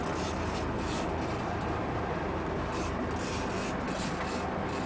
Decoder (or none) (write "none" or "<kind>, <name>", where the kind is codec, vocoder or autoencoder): none